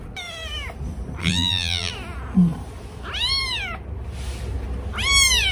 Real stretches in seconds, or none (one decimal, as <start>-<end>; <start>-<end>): 0.0-1.2; 1.9-5.5